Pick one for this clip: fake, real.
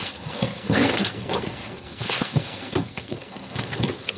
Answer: fake